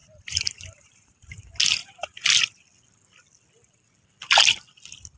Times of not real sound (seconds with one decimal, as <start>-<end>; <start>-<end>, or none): 0.0-1.4; 1.8-2.6

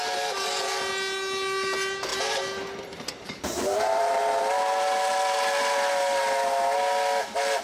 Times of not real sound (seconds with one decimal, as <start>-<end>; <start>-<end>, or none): 2.1-4.4

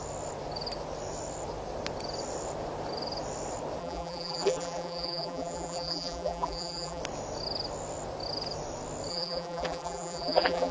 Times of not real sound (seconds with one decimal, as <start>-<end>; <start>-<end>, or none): 3.8-7.0; 9.1-10.7

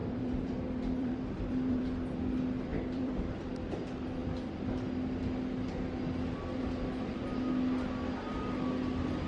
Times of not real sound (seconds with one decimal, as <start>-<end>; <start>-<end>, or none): 0.0-1.8; 2.7-3.3

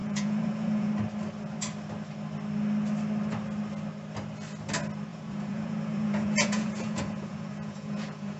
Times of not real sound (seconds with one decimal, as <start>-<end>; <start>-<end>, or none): 0.0-0.9; 5.1-8.4

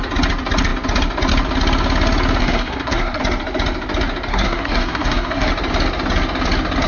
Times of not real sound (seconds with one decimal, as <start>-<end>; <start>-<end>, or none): 2.4-3.2; 4.3-5.5